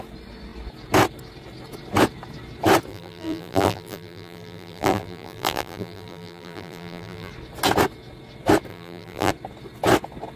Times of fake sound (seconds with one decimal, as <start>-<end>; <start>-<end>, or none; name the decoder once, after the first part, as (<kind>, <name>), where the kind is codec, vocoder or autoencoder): 2.9-7.3 (vocoder, BigVGAN v2); 8.7-9.3